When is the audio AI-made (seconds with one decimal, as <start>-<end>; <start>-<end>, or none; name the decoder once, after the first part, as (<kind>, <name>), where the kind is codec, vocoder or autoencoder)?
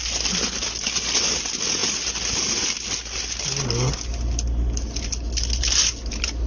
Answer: none